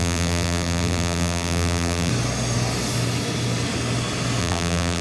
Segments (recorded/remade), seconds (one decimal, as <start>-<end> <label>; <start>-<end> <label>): 0.0-2.1 remade; 2.1-4.4 recorded; 4.4-5.0 remade